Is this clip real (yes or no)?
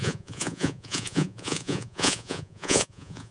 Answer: no